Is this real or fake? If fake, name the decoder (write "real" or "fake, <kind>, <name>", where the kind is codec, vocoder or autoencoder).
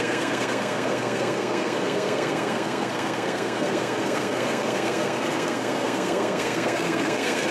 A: fake, codec, SNAC